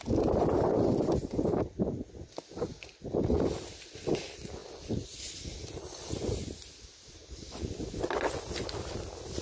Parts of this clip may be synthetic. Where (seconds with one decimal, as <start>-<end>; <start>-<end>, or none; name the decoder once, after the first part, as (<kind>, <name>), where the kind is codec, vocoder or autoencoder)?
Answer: none